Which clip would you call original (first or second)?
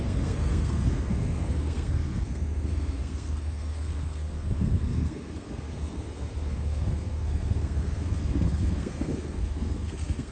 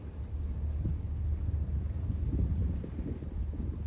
second